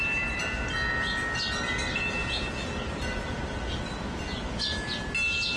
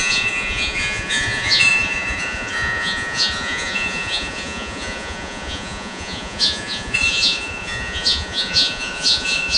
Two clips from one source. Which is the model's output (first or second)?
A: second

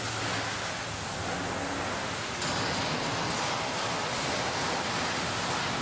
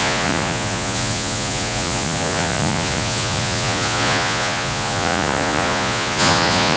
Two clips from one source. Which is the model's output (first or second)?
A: second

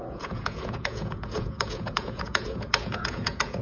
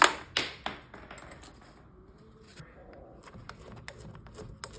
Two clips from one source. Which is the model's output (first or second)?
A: first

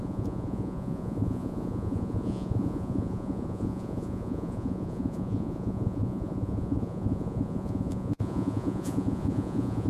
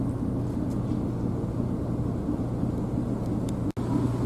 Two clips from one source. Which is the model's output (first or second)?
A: first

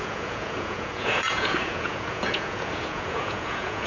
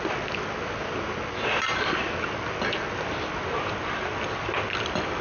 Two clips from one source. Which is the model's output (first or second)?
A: first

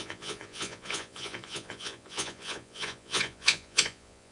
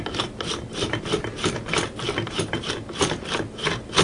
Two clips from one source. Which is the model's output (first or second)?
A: first